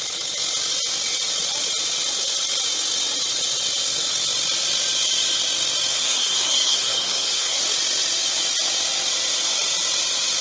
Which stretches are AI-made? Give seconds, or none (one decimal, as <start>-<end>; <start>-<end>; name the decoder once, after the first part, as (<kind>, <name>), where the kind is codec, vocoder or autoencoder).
5.9-7.6 (codec, SNAC)